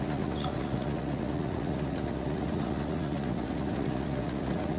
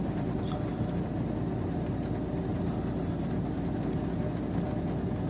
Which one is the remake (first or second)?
first